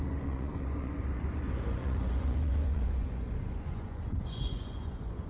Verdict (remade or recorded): remade